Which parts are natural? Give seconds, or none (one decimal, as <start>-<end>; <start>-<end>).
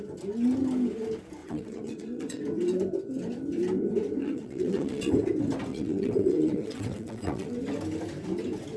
0.0-1.4; 2.4-4.2; 5.1-5.7; 7.5-8.8